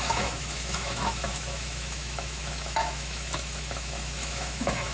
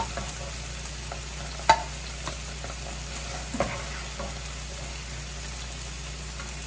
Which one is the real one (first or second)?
second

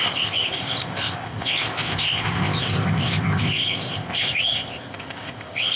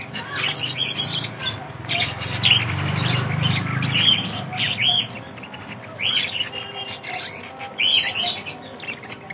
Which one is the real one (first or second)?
second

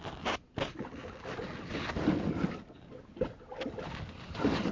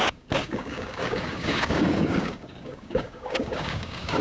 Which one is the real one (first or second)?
first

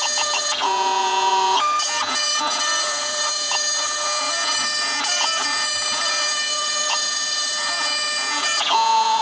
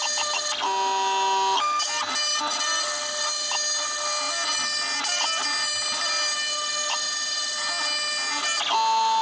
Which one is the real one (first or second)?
second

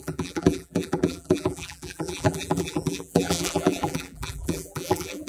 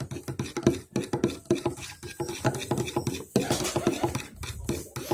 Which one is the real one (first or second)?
second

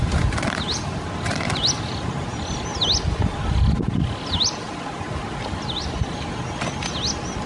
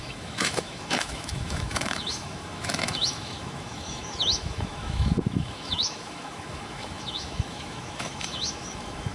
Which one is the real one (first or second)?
first